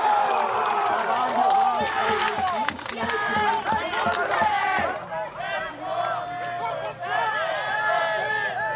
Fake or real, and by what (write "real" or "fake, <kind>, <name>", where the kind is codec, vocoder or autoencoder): real